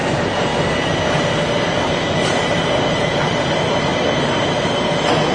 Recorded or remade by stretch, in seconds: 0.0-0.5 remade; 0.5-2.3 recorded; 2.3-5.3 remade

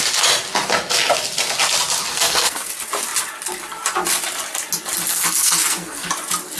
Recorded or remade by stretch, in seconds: 0.0-2.1 recorded; 2.1-2.7 remade; 2.7-5.1 recorded; 5.1-6.1 remade; 6.1-6.6 recorded

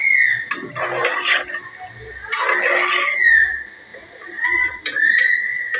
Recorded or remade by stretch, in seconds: 0.0-3.9 recorded; 3.9-4.8 remade; 4.8-5.8 recorded